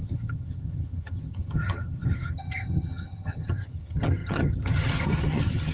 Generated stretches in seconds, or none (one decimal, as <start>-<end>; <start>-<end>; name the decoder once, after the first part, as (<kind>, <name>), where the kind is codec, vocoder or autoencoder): 0.0-5.7 (vocoder, HiFi-GAN)